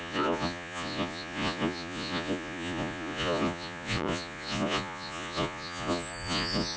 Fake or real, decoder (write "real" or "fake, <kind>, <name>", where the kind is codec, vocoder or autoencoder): fake, vocoder, Vocos